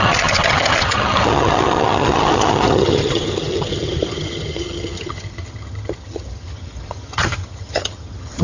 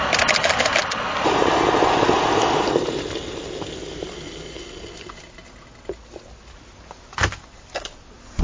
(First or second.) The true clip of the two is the second